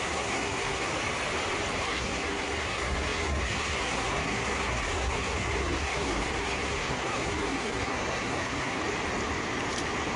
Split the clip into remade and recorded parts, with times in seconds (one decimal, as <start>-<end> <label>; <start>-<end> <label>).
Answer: 0.0-0.9 remade; 0.9-1.8 recorded; 1.8-8.8 remade; 8.8-10.2 recorded